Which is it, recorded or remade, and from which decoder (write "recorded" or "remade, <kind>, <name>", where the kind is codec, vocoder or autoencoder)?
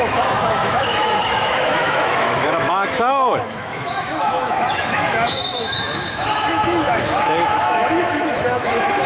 remade, autoencoder, DAC-VAE